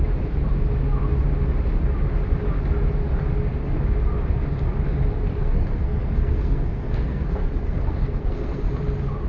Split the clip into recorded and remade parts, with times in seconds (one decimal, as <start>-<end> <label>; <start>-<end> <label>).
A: 0.0-5.3 recorded; 5.3-8.7 remade; 8.7-9.3 recorded